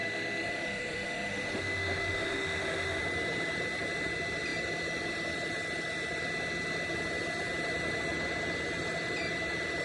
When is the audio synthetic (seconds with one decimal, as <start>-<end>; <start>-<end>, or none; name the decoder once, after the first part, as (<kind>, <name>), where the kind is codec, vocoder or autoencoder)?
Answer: 0.0-3.0 (autoencoder, DAC-VAE)